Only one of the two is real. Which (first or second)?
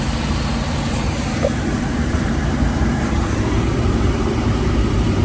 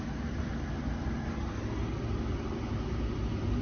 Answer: second